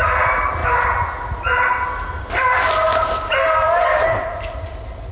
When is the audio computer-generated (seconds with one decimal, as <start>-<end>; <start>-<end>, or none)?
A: none